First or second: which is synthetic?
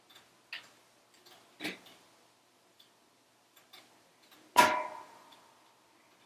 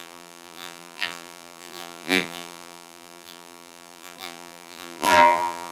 second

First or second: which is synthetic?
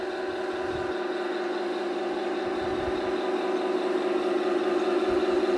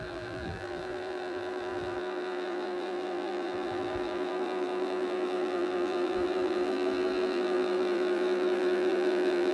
second